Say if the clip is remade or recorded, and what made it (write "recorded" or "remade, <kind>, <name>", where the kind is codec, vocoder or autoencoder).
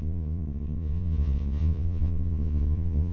remade, vocoder, Vocos